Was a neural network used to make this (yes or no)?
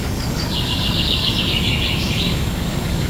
yes